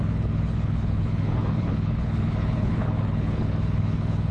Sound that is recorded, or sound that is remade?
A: remade